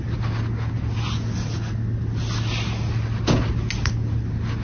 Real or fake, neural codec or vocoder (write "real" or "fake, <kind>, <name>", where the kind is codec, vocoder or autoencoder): real